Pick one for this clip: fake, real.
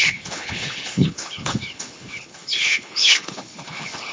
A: fake